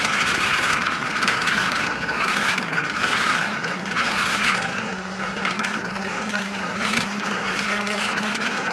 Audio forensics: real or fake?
fake